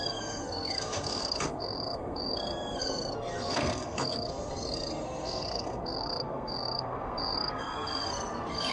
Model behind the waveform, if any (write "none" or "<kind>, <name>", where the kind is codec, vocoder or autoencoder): codec, SNAC